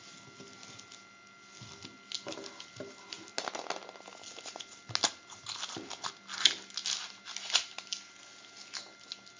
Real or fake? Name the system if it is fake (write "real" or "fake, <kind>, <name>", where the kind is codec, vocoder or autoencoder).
real